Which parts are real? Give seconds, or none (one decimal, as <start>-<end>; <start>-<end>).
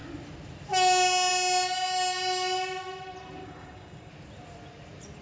0.0-3.4; 4.1-5.2